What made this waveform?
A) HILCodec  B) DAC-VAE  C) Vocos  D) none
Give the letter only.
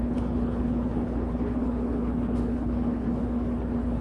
A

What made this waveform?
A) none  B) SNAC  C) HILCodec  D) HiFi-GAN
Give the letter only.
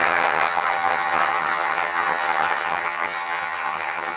D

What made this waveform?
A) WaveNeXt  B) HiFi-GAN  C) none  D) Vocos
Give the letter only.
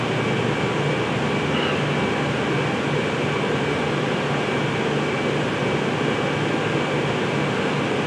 C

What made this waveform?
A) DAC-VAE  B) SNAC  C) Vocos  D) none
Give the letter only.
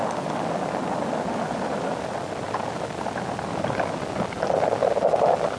D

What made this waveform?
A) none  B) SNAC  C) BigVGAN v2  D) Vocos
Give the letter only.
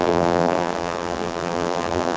C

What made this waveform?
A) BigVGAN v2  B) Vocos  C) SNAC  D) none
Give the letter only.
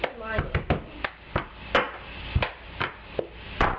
D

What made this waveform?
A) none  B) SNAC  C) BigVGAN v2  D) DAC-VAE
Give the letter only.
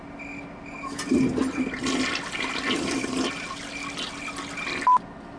A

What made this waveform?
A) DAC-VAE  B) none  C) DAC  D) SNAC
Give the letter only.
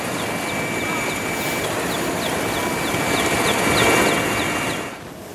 B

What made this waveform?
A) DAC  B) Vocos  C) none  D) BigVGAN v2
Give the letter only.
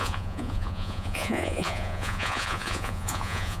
B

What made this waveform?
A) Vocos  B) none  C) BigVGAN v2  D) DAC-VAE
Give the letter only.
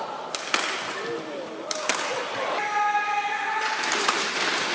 B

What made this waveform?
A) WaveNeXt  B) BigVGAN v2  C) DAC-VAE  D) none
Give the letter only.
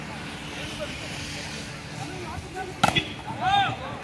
D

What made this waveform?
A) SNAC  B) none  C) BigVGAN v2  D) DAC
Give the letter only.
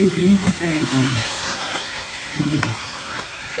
A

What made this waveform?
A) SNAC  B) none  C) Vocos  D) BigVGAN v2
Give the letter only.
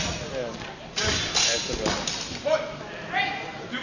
B